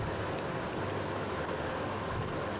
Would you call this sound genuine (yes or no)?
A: yes